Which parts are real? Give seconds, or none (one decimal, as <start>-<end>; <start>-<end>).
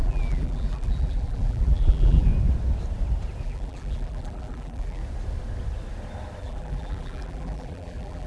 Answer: 2.3-3.4; 5.0-6.4